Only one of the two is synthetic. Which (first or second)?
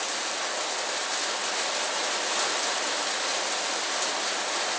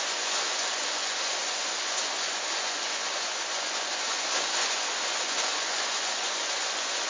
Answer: second